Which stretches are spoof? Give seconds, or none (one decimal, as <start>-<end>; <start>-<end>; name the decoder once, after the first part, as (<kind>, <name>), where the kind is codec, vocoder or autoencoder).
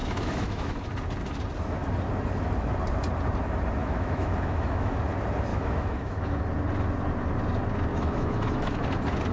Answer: 0.0-0.8 (autoencoder, DAC-VAE); 3.8-5.0; 5.5-6.4; 7.9-8.8